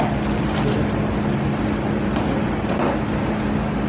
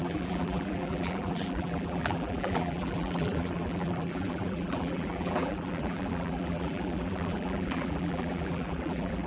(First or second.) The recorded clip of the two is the first